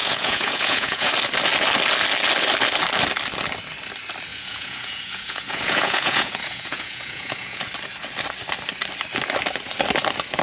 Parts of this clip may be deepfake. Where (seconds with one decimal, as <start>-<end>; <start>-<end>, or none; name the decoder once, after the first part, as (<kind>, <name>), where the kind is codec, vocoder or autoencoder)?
0.0-1.1 (vocoder, Vocos); 4.3-7.7